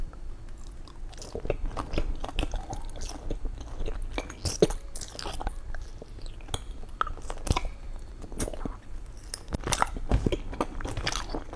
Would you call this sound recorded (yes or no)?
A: yes